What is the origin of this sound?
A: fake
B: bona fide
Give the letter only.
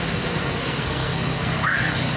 A